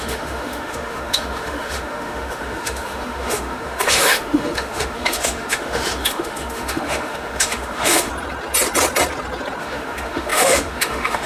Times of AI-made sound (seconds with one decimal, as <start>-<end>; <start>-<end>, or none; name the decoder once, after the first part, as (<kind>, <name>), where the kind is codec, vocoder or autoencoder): 0.0-8.1 (autoencoder, DAC-VAE); 9.6-11.3